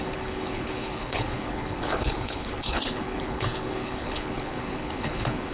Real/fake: fake